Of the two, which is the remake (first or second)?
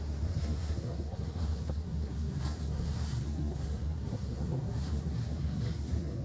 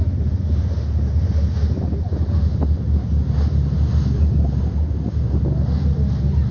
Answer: first